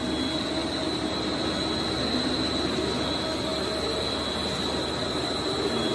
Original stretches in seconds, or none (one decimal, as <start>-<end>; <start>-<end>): 0.0-0.6; 1.4-5.9